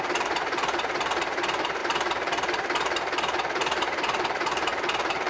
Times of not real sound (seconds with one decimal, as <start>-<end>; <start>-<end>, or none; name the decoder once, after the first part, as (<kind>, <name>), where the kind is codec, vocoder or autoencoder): 0.0-5.3 (vocoder, BigVGAN v2)